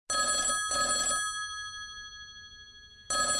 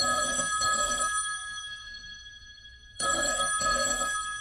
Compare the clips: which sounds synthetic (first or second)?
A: second